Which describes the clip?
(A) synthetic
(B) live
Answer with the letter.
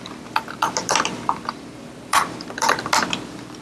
A